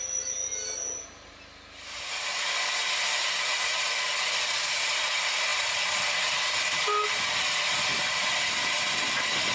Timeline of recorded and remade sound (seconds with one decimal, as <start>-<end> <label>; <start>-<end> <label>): 0.0-5.5 recorded; 5.5-6.1 remade; 6.1-7.9 recorded; 7.9-9.5 remade